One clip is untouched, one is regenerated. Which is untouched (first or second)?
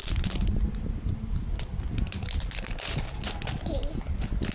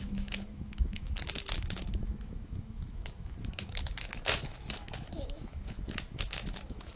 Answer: first